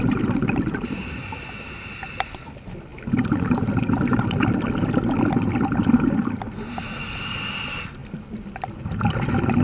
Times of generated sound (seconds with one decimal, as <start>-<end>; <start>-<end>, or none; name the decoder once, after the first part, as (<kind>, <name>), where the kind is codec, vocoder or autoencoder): none